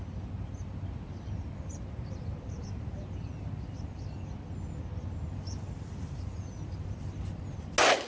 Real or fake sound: real